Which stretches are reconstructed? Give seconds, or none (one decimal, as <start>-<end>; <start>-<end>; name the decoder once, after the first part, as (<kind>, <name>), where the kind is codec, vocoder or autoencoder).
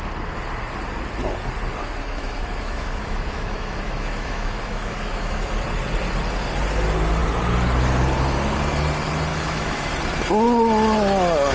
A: 1.8-5.5 (autoencoder, DAC-VAE); 9.3-9.9